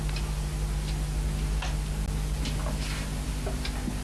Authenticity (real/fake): real